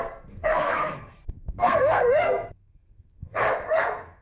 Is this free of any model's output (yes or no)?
no